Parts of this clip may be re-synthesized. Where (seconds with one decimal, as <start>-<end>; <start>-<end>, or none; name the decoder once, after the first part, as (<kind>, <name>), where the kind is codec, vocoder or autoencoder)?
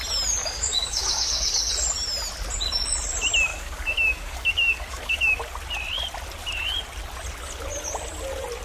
0.4-1.7 (codec, DAC); 3.5-5.4